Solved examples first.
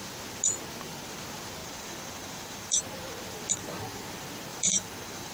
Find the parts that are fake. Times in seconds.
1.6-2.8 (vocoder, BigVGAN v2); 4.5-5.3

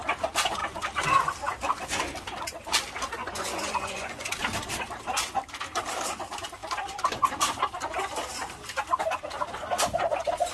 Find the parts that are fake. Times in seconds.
3.2-4.3 (vocoder, Vocos)